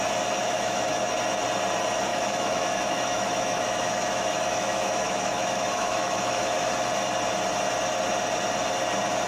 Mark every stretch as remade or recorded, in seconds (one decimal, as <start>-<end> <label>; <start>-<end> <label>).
0.0-0.4 recorded; 0.4-1.1 remade; 1.1-2.1 recorded; 2.1-6.7 remade; 6.7-9.3 recorded

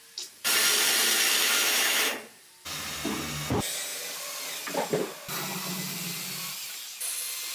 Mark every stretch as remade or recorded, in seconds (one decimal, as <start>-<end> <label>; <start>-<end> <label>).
0.0-1.4 recorded; 1.4-2.1 remade; 2.1-7.5 recorded